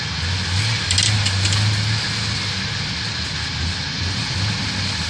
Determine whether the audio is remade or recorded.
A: recorded